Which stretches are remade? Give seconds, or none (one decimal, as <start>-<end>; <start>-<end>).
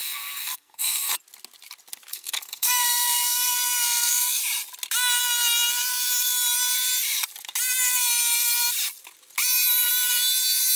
0.0-1.1; 2.1-4.4